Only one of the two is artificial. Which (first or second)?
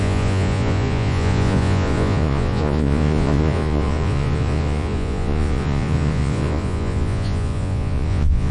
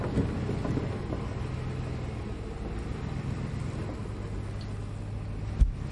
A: first